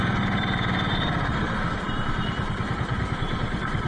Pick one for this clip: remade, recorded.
remade